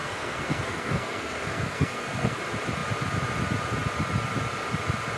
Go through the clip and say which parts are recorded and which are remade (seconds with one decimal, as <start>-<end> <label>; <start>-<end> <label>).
0.0-2.4 remade; 2.4-5.2 recorded